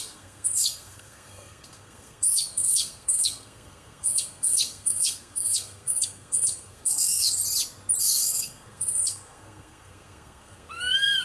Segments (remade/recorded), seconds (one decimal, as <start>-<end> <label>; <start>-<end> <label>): 0.0-7.4 remade; 7.4-8.0 recorded; 8.0-11.2 remade